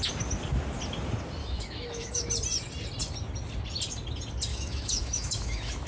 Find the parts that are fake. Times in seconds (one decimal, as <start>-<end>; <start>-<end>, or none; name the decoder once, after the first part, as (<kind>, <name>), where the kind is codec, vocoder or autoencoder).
1.4-2.3 (autoencoder, DAC-VAE); 4.5-5.9